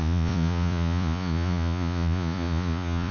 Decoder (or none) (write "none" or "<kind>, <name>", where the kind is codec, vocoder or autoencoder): vocoder, Vocos